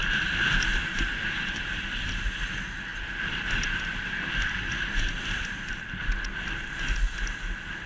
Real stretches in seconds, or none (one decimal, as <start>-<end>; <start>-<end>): 0.8-2.9; 6.7-7.9